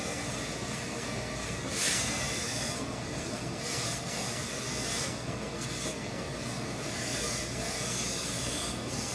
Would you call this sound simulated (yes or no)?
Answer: yes